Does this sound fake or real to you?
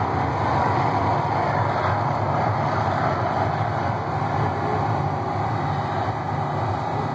real